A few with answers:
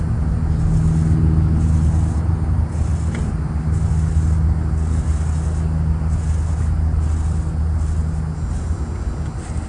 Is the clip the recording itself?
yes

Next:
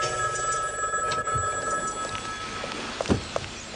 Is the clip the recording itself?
yes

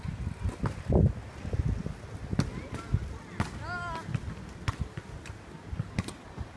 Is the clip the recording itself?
yes